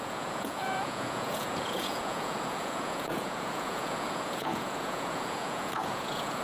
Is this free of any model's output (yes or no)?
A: no